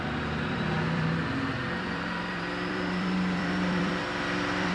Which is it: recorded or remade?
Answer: remade